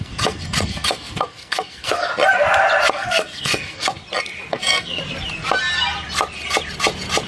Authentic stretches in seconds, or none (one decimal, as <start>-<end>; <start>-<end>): 2.1-2.9; 4.0-4.5; 5.0-7.3